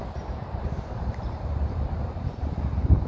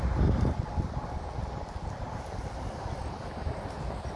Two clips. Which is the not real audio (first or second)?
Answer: first